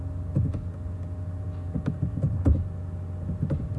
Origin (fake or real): real